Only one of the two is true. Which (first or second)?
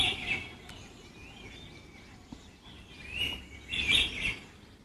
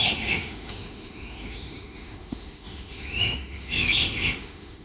first